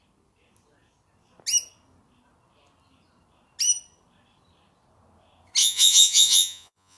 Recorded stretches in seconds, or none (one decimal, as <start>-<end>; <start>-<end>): 0.0-5.6